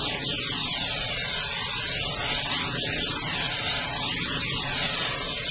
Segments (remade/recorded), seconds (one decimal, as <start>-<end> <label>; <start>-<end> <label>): 0.0-5.5 recorded